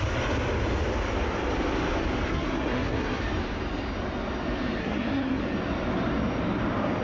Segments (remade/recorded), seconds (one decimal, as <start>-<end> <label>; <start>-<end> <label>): 0.0-2.3 recorded; 2.3-3.2 remade; 3.2-4.8 recorded; 4.8-5.4 remade; 5.4-7.0 recorded